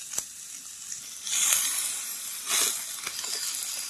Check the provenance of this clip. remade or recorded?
recorded